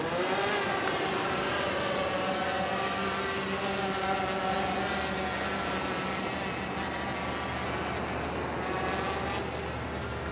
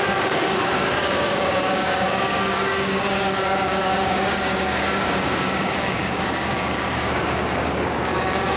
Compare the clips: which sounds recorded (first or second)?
first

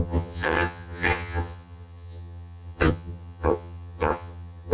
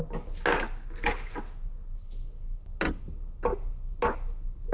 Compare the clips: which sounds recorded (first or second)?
second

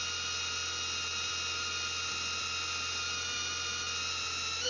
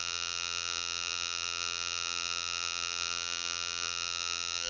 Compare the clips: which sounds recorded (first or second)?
first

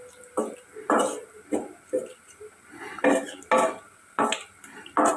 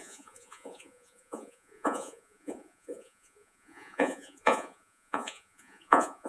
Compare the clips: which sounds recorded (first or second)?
first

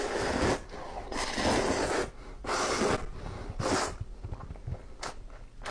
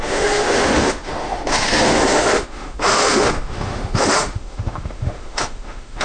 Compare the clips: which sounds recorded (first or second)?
first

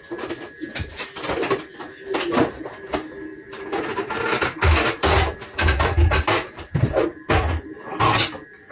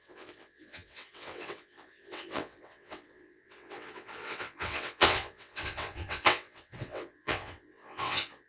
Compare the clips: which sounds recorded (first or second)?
first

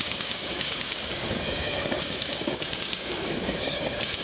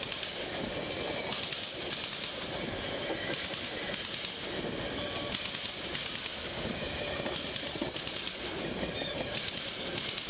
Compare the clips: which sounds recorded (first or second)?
second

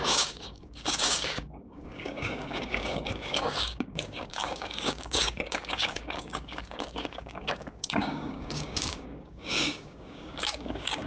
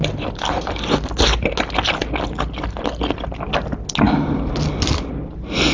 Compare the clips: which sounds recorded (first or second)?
second